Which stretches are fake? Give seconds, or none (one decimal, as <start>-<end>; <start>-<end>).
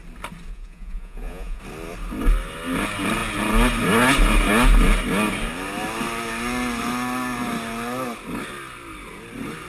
0.5-1.6